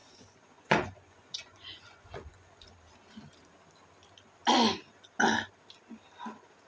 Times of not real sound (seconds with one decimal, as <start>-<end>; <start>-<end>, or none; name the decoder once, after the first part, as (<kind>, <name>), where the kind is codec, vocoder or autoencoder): 0.0-2.7 (vocoder, Vocos)